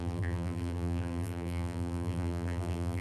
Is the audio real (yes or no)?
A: no